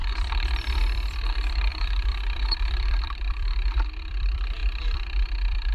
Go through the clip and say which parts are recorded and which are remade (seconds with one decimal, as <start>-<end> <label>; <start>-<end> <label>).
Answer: 0.0-5.7 remade